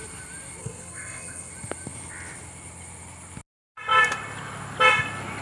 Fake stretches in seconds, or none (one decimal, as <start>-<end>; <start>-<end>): 0.6-1.5